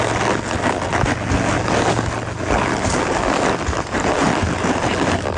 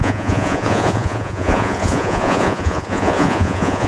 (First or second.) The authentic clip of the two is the first